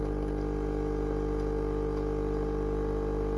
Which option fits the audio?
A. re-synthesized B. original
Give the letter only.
B